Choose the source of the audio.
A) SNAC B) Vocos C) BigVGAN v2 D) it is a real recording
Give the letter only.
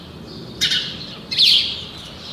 D